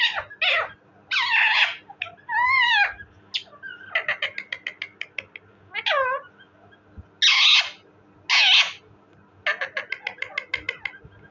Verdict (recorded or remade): recorded